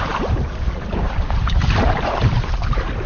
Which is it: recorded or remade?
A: remade